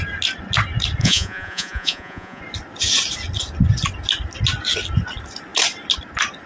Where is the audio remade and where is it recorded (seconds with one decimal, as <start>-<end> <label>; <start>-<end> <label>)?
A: 0.0-1.0 recorded; 1.0-2.4 remade; 2.4-6.5 recorded